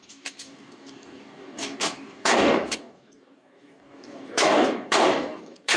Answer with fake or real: fake